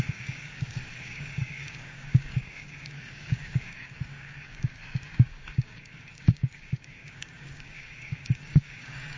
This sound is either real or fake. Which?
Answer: fake